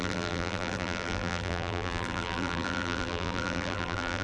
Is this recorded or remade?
remade